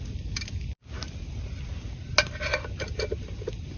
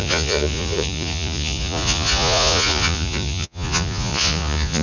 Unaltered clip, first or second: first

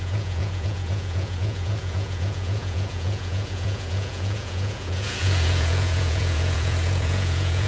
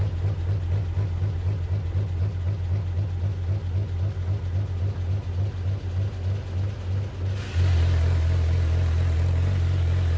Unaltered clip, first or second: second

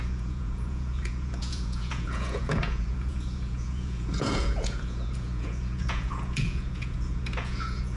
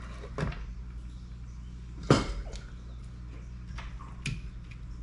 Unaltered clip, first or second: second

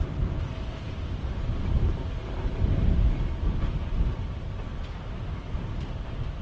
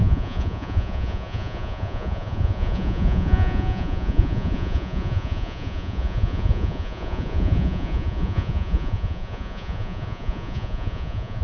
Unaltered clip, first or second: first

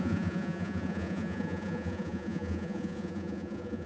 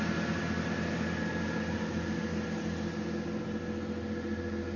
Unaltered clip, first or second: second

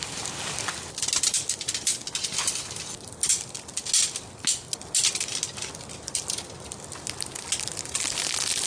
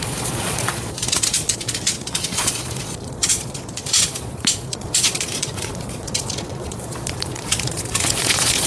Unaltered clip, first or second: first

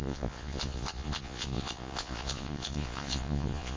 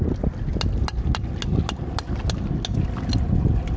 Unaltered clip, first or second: second